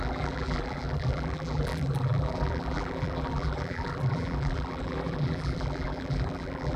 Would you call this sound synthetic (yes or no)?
yes